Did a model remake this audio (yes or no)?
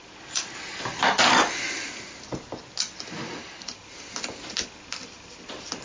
no